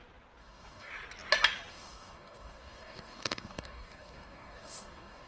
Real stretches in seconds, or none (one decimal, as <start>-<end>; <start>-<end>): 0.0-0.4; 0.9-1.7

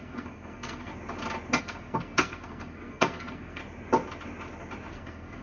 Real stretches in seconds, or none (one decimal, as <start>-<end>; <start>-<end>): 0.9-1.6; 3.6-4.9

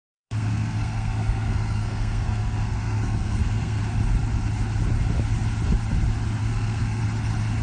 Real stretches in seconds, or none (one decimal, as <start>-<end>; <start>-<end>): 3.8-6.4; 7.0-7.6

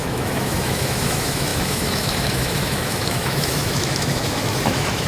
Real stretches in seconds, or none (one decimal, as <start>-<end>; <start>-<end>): none

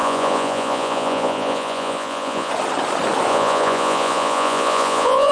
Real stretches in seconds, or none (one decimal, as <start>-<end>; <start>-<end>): 2.5-3.3

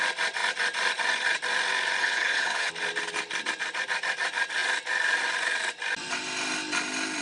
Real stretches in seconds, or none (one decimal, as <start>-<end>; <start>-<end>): 0.0-2.0; 2.7-7.2